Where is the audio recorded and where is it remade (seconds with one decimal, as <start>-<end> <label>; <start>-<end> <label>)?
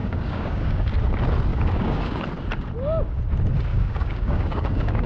0.0-0.9 remade; 0.9-1.5 recorded; 1.5-2.2 remade; 2.2-3.7 recorded; 3.7-5.1 remade